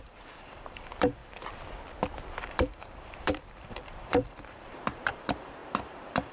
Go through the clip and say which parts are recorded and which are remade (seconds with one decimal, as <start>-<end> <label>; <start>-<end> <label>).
0.0-1.2 remade; 1.2-2.4 recorded; 2.4-6.3 remade